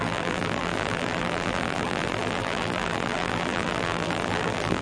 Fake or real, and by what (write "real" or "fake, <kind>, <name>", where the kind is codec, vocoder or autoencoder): fake, vocoder, BigVGAN v2